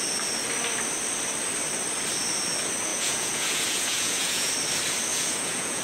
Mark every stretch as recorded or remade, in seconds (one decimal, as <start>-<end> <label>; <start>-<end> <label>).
0.0-2.9 recorded; 2.9-4.5 remade; 4.5-5.1 recorded; 5.1-5.8 remade